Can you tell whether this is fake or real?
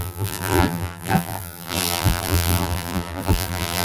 fake